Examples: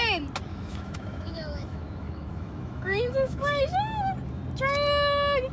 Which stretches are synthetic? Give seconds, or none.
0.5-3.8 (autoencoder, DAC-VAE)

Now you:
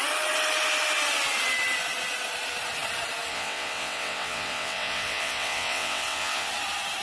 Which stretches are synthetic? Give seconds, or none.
3.3-6.5 (vocoder, WaveNeXt)

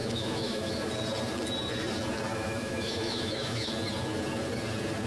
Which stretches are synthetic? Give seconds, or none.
0.0-0.9 (autoencoder, DAC-VAE); 2.3-3.7

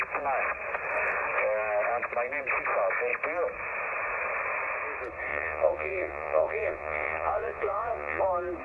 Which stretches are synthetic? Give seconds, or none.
5.3-8.2 (vocoder, Vocos)